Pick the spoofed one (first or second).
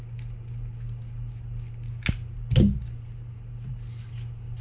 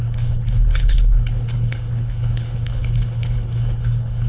second